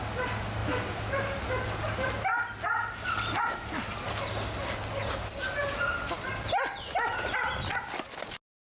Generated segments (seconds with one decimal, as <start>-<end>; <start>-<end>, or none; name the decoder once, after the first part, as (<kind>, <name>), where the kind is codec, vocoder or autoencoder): none